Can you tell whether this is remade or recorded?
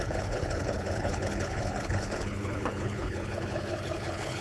remade